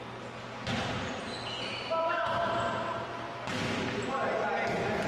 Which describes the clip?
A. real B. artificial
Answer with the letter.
A